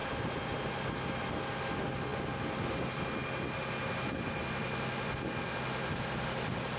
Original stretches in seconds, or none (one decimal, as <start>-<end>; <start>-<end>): 0.0-6.8